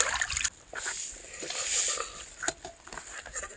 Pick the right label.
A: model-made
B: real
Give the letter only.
B